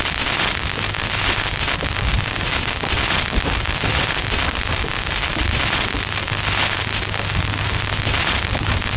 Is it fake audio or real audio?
real